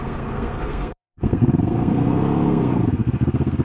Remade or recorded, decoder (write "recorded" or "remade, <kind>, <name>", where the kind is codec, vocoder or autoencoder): remade, codec, SNAC